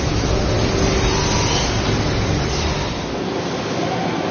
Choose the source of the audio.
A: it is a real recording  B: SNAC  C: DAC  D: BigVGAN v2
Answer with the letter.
A